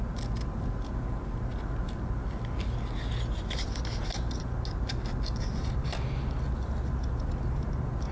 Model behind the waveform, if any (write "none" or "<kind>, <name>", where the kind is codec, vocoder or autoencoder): none